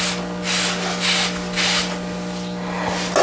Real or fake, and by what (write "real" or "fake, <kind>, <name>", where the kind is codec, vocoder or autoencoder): real